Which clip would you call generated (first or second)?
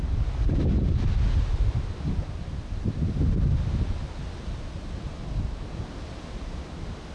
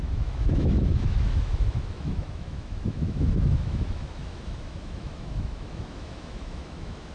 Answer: second